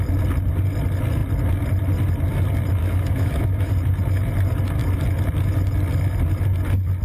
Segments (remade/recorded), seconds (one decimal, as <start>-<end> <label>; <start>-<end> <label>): 0.0-2.8 recorded; 2.8-3.7 remade; 3.7-7.0 recorded